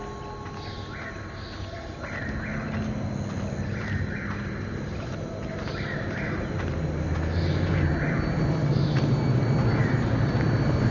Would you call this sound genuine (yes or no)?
yes